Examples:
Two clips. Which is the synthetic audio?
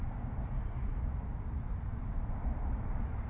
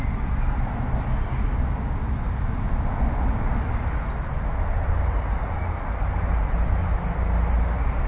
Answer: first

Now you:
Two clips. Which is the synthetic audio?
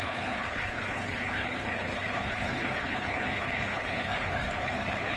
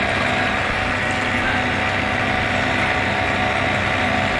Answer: first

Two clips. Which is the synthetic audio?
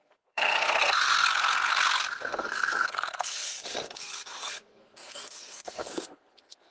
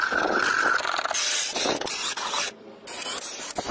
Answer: first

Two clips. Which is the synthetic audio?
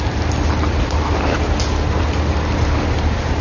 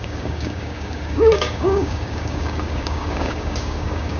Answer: second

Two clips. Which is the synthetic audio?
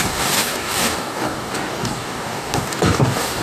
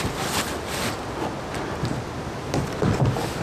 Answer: first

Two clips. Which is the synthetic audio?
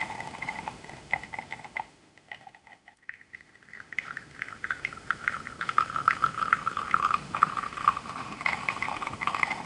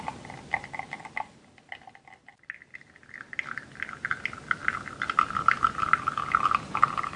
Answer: first